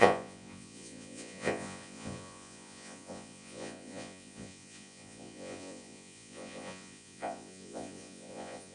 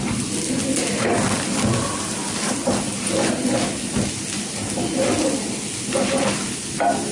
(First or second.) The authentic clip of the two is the second